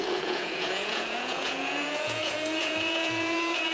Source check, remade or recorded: remade